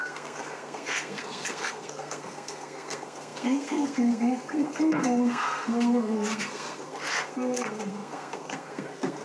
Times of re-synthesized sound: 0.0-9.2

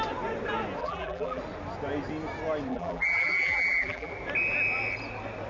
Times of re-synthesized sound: 0.8-1.4; 2.7-4.1

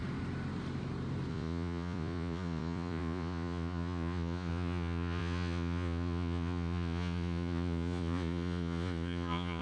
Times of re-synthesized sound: 1.3-9.6

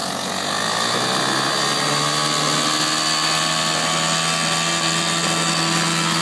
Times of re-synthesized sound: none